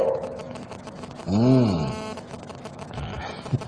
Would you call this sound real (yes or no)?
no